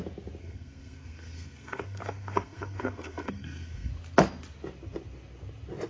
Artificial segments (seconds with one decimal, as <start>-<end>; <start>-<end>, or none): 0.4-3.9